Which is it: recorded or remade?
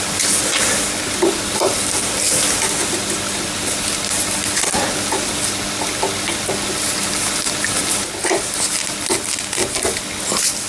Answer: recorded